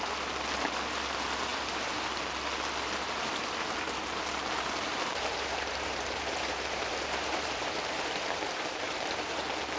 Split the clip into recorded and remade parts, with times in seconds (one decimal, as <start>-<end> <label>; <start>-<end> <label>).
0.0-1.5 recorded; 1.5-2.2 remade; 2.2-4.9 recorded; 4.9-9.4 remade; 9.4-9.8 recorded